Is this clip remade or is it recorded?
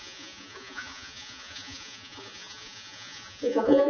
remade